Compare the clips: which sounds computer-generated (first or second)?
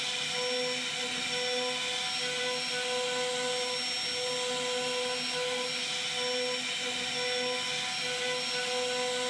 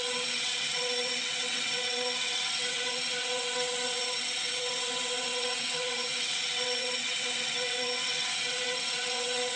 second